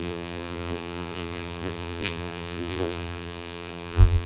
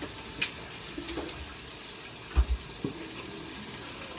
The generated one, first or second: first